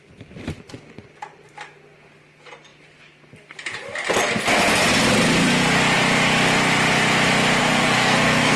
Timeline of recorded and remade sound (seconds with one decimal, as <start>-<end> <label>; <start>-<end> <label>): 0.0-7.6 recorded; 7.6-8.6 remade